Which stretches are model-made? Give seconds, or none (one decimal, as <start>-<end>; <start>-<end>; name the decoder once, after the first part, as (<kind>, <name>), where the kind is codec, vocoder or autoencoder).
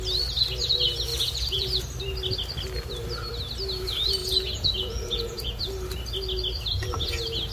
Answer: 1.1-1.8 (vocoder, Vocos); 4.2-5.6